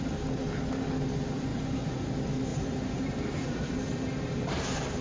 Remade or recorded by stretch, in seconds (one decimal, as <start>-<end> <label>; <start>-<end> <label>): 0.0-1.5 recorded; 1.5-2.1 remade; 2.1-2.5 recorded; 2.5-4.4 remade; 4.4-5.0 recorded